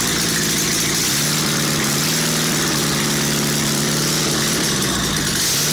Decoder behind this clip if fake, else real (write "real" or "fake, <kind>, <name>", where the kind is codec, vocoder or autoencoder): real